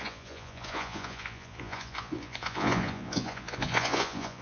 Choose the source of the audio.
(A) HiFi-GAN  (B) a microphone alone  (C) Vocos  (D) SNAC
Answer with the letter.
C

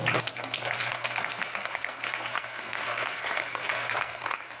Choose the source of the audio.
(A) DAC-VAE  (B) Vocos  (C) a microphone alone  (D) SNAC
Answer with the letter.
D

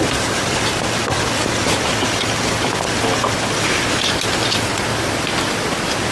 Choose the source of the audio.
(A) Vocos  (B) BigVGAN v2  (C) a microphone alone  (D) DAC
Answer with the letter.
B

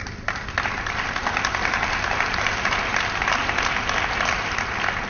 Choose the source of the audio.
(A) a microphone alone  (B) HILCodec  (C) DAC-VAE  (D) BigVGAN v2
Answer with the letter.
D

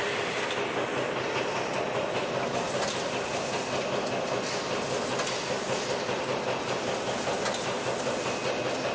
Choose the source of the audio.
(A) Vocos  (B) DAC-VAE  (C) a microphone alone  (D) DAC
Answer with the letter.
C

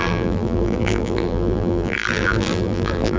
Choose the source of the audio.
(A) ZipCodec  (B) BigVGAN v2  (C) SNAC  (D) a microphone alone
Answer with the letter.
B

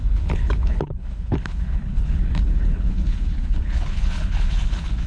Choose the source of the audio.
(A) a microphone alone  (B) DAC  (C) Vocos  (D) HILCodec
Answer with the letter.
D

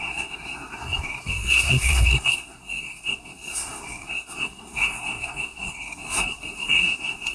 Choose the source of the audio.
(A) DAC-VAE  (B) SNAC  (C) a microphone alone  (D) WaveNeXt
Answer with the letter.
B